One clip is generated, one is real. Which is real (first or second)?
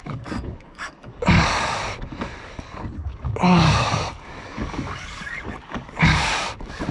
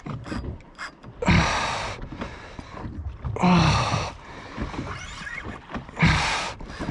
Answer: second